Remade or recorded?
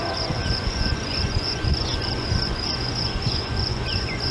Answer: remade